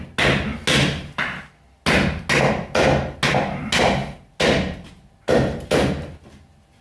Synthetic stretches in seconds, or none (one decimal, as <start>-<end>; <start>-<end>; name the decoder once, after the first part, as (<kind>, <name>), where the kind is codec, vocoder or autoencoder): none